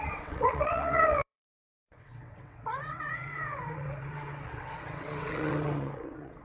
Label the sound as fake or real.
fake